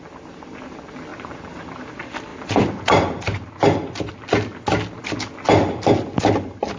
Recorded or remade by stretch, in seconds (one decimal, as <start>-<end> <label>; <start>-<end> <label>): 0.0-1.1 recorded; 1.1-1.9 remade; 1.9-2.3 recorded; 2.3-4.1 remade; 4.1-6.8 recorded